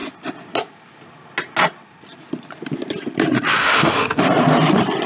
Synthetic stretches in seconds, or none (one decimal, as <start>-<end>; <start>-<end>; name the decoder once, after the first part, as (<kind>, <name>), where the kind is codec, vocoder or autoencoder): 3.6-4.2 (autoencoder, DAC-VAE)